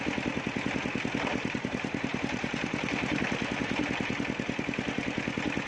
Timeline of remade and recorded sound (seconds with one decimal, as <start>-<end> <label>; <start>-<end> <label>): 0.0-1.3 recorded; 1.3-3.2 remade; 3.2-5.7 recorded